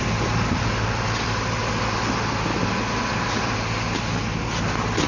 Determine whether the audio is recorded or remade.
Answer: recorded